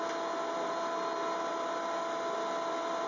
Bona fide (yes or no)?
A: yes